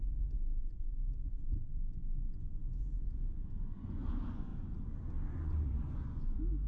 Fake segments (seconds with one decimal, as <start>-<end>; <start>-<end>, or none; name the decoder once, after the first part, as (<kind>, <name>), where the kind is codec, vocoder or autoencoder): 0.6-4.5 (vocoder, Vocos); 5.0-6.7